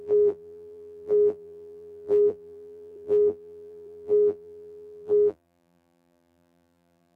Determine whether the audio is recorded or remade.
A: remade